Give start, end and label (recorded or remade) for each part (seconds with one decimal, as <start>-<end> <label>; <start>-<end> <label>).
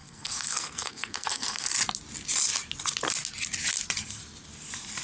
0.0-1.7 remade; 1.7-5.0 recorded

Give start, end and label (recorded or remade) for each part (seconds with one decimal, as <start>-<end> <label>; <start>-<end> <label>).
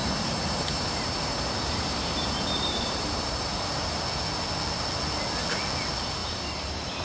0.0-4.0 remade; 4.0-6.2 recorded; 6.2-7.0 remade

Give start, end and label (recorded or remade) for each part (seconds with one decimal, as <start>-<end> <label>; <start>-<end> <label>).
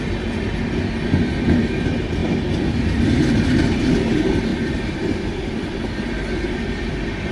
0.0-2.2 recorded; 2.2-3.0 remade; 3.0-4.5 recorded; 4.5-6.0 remade; 6.0-7.3 recorded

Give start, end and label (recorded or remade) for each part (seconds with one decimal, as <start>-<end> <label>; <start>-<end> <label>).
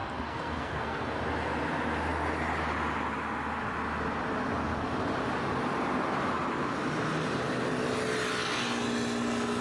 0.0-1.2 remade; 1.2-9.6 recorded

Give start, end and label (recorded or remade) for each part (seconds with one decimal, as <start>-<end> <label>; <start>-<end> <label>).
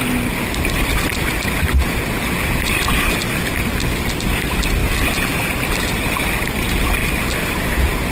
0.0-1.1 recorded; 1.1-2.0 remade; 2.0-4.8 recorded; 4.8-6.2 remade; 6.2-7.0 recorded; 7.0-7.6 remade; 7.6-8.1 recorded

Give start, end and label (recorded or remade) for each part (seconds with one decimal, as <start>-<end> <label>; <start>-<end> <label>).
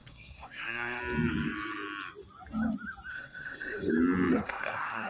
0.0-1.0 remade; 1.0-3.1 recorded; 3.1-3.9 remade; 3.9-4.3 recorded; 4.3-5.1 remade